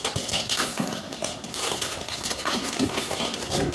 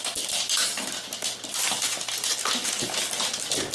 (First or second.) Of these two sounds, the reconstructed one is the first